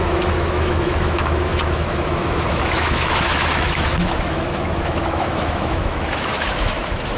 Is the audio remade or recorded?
remade